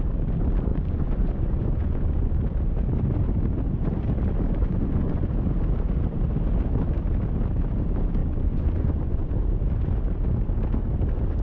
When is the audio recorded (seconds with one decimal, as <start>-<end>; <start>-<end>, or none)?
0.0-0.7; 2.4-4.6; 5.3-8.2; 9.3-11.4